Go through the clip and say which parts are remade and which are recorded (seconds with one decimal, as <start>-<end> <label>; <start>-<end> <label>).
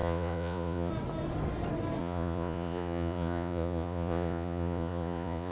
0.0-0.9 remade; 0.9-2.0 recorded; 2.0-5.5 remade